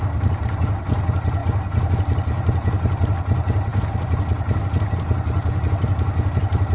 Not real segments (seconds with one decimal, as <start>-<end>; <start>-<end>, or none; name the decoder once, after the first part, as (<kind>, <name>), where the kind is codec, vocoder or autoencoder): none